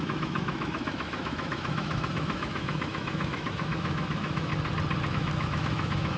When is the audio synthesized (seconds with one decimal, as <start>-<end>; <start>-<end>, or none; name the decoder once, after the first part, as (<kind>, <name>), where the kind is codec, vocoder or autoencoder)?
0.0-4.5 (autoencoder, DAC-VAE); 5.1-6.2

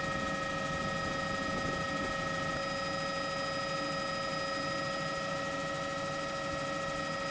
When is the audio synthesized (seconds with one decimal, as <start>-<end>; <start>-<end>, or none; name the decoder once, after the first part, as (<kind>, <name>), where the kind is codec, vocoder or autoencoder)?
none

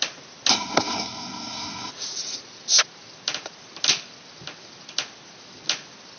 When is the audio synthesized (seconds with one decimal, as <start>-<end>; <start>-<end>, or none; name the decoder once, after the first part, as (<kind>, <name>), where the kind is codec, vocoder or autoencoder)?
0.5-1.9 (codec, SNAC)

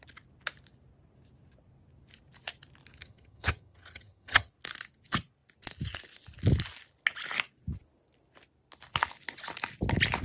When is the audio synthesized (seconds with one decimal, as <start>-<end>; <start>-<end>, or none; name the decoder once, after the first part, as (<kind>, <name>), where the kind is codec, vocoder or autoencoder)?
3.0-4.5 (vocoder, HiFi-GAN)